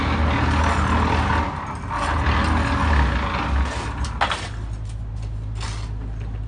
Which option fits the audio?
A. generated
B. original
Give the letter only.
B